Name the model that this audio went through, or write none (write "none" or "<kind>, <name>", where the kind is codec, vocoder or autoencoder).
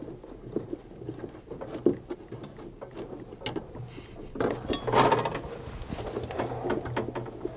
none